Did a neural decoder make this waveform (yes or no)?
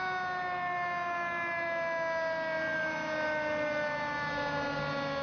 no